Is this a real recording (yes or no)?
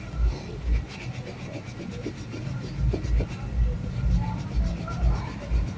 yes